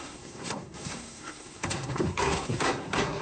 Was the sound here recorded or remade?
remade